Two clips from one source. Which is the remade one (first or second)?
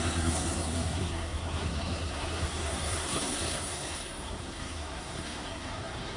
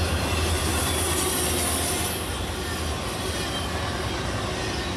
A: first